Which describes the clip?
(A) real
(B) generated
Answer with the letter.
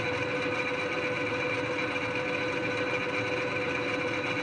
A